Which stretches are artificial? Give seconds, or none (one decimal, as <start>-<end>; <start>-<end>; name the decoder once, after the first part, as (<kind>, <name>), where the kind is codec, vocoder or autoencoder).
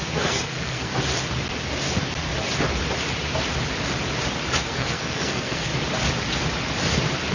0.0-0.9 (codec, SNAC); 4.6-5.7